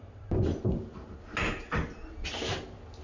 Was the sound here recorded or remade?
recorded